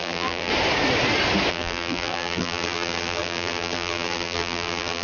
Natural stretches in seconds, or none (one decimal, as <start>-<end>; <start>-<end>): 0.5-1.5